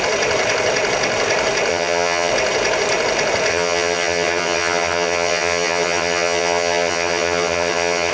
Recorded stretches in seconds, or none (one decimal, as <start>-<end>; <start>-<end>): 0.0-1.7; 2.3-3.5

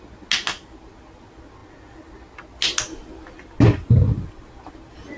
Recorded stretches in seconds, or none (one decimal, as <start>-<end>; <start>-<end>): 0.0-5.2